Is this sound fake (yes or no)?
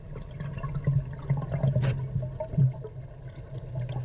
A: no